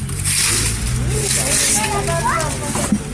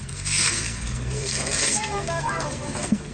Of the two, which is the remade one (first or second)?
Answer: second